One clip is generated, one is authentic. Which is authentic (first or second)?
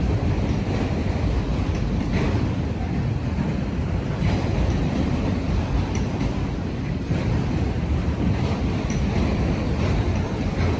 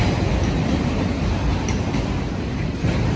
second